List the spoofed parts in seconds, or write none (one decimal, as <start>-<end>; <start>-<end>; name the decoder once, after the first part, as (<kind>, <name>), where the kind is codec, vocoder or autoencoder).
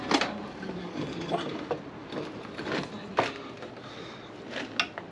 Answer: 0.8-1.3 (codec, DAC)